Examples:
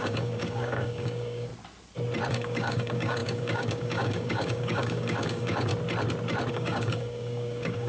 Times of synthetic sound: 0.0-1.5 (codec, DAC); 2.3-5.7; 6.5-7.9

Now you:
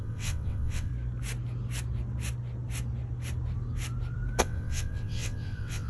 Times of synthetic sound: 0.0-0.9 (vocoder, WaveNeXt); 4.4-5.9